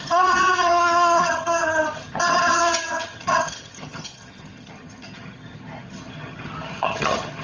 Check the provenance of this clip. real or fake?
fake